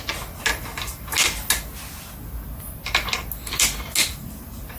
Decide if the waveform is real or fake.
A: real